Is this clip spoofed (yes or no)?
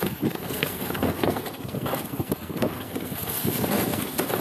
yes